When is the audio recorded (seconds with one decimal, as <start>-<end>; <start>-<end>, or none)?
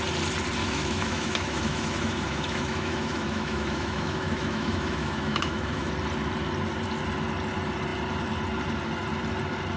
0.0-0.6; 5.9-9.8